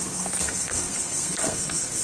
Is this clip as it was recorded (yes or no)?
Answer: no